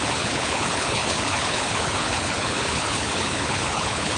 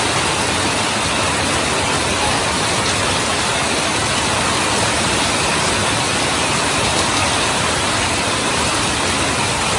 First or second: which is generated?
first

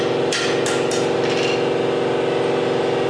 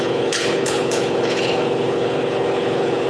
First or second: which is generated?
second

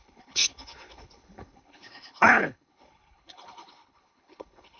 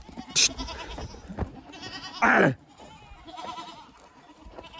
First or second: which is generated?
first